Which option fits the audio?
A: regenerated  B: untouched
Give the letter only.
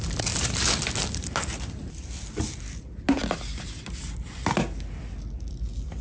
B